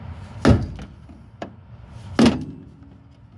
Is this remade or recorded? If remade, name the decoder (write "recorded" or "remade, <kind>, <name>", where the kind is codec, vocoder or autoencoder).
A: recorded